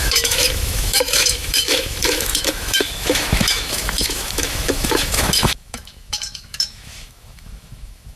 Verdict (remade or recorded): remade